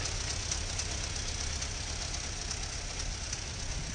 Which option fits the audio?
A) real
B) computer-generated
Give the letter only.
A